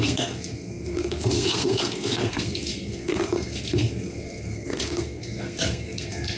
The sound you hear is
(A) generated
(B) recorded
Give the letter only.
A